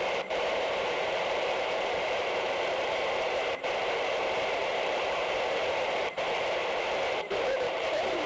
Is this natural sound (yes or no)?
no